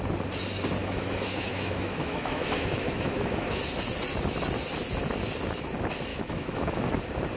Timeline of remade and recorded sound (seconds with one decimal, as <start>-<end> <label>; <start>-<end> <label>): 0.0-0.8 recorded; 0.8-3.6 remade; 3.6-6.1 recorded; 6.1-7.0 remade; 7.0-7.4 recorded

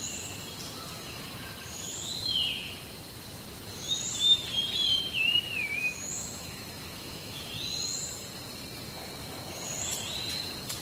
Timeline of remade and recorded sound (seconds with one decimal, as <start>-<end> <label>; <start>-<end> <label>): 0.0-5.8 recorded; 5.8-7.5 remade; 7.5-10.8 recorded